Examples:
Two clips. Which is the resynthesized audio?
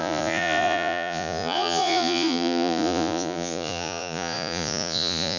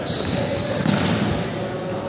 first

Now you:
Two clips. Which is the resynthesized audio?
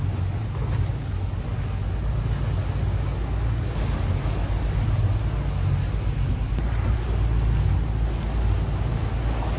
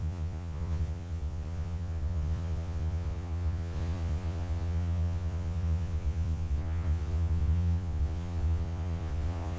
second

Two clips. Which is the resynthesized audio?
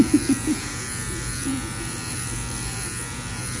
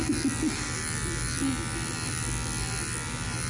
first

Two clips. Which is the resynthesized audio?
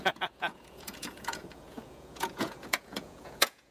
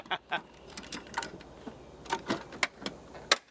first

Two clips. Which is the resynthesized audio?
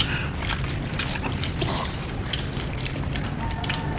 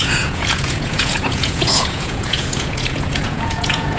second